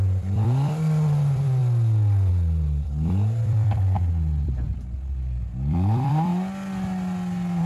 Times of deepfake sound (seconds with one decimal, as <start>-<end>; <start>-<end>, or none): 0.0-1.6; 2.3-6.3